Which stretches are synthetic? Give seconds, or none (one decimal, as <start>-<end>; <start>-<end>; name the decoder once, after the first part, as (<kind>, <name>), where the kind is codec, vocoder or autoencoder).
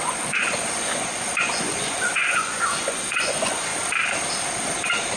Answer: 0.0-3.7 (vocoder, Vocos)